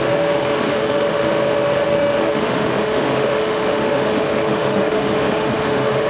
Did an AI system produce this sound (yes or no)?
yes